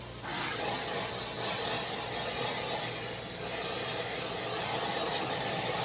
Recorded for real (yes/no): yes